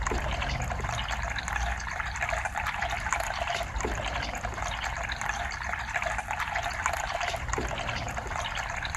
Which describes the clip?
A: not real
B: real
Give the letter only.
B